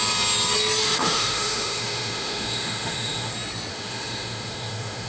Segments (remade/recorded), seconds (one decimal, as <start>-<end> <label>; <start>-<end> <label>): 0.0-0.8 recorded; 0.8-3.3 remade; 3.3-3.7 recorded; 3.7-5.1 remade